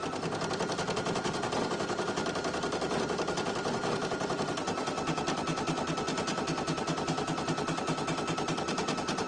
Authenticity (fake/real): real